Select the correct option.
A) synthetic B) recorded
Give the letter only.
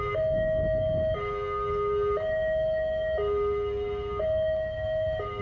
B